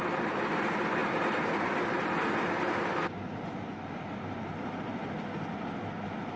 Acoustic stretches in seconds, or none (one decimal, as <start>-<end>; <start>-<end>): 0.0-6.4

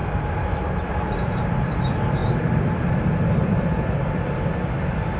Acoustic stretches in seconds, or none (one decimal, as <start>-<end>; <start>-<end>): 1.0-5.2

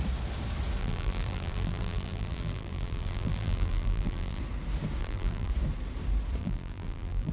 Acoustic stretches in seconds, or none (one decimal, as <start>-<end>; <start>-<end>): 0.0-0.8; 4.4-5.0; 5.5-6.4

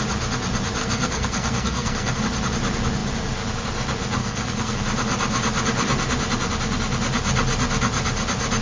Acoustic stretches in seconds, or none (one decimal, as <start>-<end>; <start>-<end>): 0.0-0.8; 2.2-4.2; 4.8-8.6